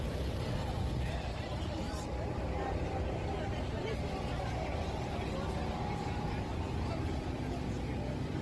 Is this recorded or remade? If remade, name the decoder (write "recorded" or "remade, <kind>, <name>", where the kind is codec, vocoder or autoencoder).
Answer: recorded